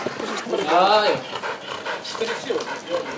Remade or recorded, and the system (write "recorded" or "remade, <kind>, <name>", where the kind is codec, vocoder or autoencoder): remade, vocoder, BigVGAN v2